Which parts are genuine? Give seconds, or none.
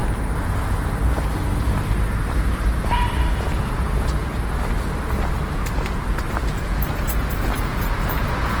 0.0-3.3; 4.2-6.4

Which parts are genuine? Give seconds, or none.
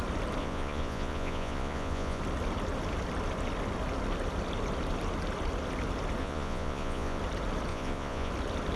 0.0-0.4; 2.2-6.2; 7.2-7.7; 8.3-8.8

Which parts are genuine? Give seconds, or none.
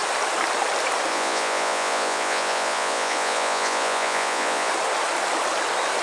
0.0-1.1; 4.7-6.0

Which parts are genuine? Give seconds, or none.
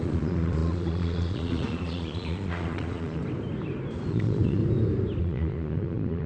3.2-4.1; 4.6-5.2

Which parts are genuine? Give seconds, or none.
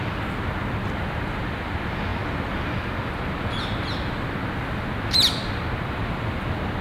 0.0-6.8